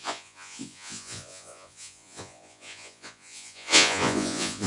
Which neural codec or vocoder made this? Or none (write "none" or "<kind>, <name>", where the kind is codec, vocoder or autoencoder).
vocoder, Vocos